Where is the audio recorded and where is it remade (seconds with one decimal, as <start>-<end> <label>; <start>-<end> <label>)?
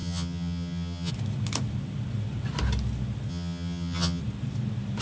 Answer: 0.0-1.1 remade; 1.1-3.3 recorded; 3.3-4.2 remade; 4.2-5.0 recorded